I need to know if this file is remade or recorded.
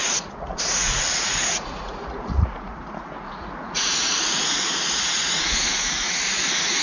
remade